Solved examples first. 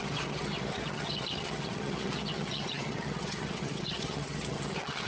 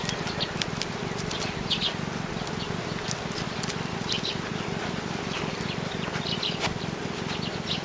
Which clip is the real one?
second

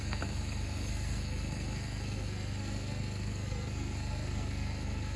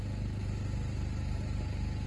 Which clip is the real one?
second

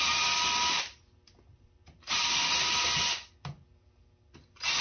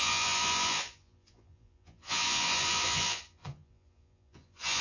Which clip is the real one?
first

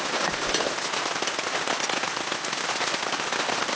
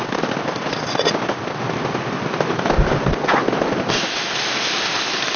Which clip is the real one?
first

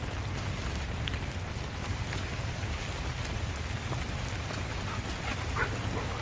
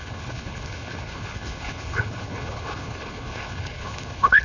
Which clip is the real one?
first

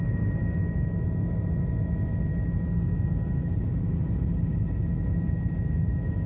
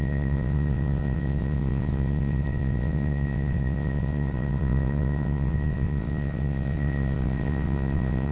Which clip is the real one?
first